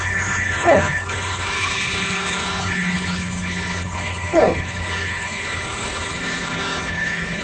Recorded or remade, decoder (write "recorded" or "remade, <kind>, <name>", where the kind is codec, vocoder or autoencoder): remade, codec, HILCodec